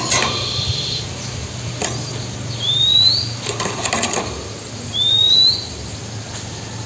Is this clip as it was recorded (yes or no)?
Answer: yes